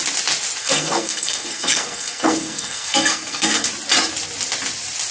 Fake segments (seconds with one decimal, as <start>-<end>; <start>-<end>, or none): 0.6-3.7